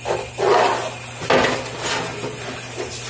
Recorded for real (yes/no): yes